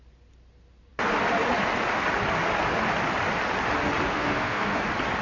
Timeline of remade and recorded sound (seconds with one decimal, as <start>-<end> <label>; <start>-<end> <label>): 0.0-4.1 recorded; 4.1-4.8 remade; 4.8-5.2 recorded